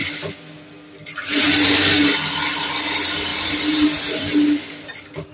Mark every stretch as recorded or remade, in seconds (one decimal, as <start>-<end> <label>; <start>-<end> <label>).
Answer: 0.0-3.3 recorded; 3.3-4.8 remade; 4.8-5.3 recorded